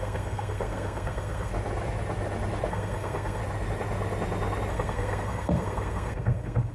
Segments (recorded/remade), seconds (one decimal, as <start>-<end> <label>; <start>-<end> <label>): 0.0-1.5 remade; 1.5-2.7 recorded; 2.7-3.4 remade; 3.4-4.7 recorded; 4.7-6.7 remade